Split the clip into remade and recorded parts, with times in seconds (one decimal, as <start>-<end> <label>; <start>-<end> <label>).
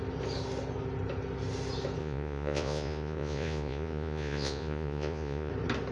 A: 0.0-2.0 recorded; 2.0-5.5 remade; 5.5-5.9 recorded